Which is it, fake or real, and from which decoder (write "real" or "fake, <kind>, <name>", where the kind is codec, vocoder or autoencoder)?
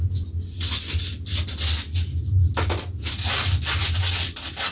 real